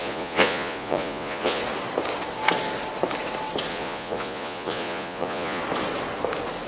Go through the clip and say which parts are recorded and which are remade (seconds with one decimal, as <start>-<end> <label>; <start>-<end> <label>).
0.0-1.6 remade; 1.6-3.7 recorded; 3.7-5.6 remade; 5.6-6.7 recorded